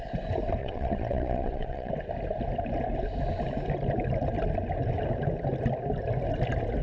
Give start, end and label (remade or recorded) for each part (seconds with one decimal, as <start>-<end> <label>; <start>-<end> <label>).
0.0-0.6 recorded; 0.6-1.9 remade; 1.9-6.8 recorded